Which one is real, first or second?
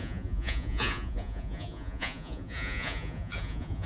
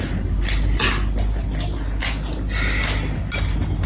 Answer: second